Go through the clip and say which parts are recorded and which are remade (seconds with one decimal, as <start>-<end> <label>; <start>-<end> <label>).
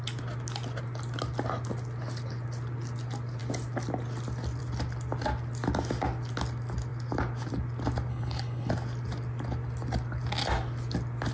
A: 0.0-8.1 recorded; 8.1-8.7 remade; 8.7-11.3 recorded